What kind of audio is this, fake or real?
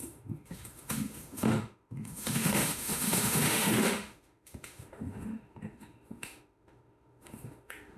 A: fake